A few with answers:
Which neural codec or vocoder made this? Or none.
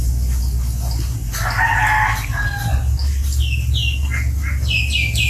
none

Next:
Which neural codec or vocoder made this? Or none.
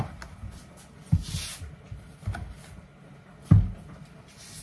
none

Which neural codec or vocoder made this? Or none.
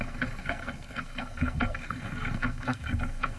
codec, SNAC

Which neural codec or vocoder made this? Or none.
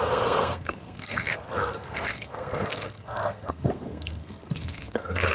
codec, SNAC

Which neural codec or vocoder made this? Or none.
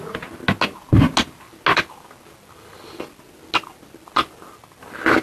none